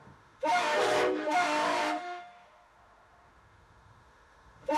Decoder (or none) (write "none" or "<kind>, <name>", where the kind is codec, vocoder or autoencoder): autoencoder, DAC-VAE